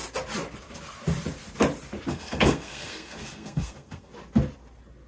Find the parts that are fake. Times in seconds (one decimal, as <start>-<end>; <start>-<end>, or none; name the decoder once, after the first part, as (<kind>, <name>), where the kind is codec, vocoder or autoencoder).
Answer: 2.1-4.1 (codec, SNAC)